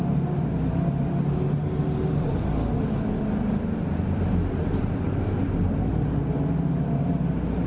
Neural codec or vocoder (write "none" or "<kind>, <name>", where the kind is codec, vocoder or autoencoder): none